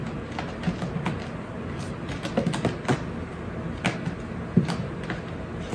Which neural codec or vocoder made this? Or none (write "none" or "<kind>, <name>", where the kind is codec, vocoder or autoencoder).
none